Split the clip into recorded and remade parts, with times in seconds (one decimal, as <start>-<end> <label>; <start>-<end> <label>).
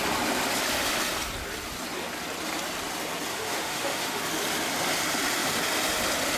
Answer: 0.0-3.3 recorded; 3.3-4.2 remade; 4.2-6.4 recorded